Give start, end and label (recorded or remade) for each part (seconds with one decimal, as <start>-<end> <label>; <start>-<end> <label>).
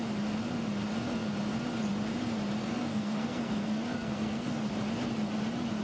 0.0-2.6 recorded; 2.6-4.7 remade; 4.7-5.8 recorded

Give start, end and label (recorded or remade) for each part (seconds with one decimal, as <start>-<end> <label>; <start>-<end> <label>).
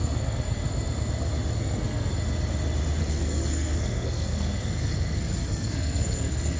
0.0-0.6 remade; 0.6-1.6 recorded; 1.6-2.1 remade; 2.1-3.0 recorded; 3.0-6.6 remade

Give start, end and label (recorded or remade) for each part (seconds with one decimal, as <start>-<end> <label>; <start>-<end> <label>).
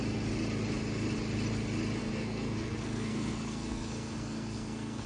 0.0-2.0 recorded; 2.0-5.1 remade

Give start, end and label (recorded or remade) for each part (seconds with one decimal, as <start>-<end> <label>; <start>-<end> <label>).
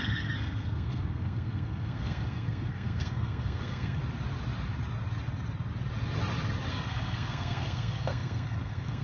0.0-4.0 remade; 4.0-6.7 recorded; 6.7-9.0 remade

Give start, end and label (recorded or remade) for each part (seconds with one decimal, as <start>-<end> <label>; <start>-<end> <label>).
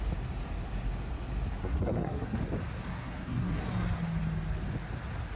0.0-1.6 recorded; 1.6-2.4 remade; 2.4-2.9 recorded; 2.9-3.6 remade; 3.6-5.4 recorded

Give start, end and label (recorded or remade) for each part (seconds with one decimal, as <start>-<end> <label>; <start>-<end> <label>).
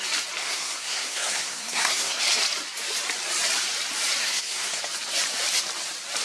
0.0-0.4 recorded; 0.4-2.2 remade; 2.2-4.2 recorded; 4.2-4.8 remade; 4.8-6.2 recorded